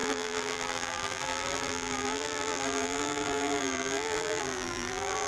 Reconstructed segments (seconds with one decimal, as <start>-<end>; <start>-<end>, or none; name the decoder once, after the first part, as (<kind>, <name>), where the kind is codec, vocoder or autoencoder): 0.0-5.3 (vocoder, BigVGAN v2)

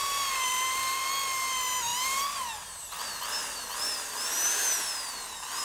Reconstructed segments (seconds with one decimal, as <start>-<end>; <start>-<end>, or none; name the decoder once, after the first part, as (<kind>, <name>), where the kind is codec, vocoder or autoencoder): 0.0-1.1 (vocoder, BigVGAN v2); 1.9-3.0

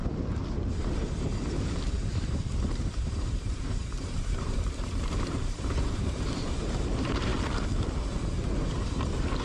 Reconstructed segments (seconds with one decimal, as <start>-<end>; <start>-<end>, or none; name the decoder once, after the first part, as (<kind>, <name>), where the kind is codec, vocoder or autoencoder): 1.9-7.3 (vocoder, BigVGAN v2); 8.5-9.4

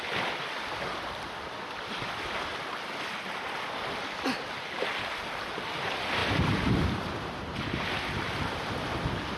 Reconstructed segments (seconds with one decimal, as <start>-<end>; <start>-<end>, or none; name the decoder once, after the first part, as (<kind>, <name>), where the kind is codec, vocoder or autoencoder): 6.2-7.1 (vocoder, BigVGAN v2)

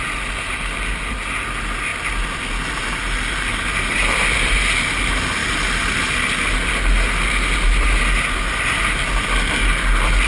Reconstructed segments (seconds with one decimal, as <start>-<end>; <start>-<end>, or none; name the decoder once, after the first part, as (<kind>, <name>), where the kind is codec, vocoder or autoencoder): none

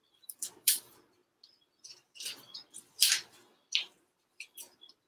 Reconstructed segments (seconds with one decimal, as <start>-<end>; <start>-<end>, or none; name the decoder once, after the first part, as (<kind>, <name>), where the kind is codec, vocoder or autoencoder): 0.0-1.2 (vocoder, BigVGAN v2); 3.1-5.1

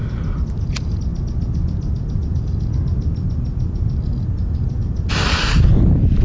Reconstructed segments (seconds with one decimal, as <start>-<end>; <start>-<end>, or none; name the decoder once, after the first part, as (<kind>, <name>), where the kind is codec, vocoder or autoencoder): none

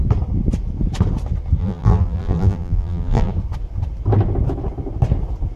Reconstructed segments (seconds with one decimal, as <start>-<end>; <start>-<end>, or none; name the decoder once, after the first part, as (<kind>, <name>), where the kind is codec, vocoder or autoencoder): 1.6-3.3 (vocoder, BigVGAN v2)